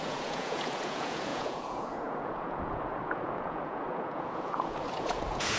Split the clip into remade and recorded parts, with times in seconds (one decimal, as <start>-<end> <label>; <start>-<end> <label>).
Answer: 0.0-5.6 remade